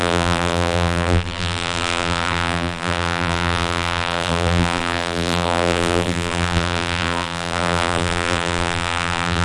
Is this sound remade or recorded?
remade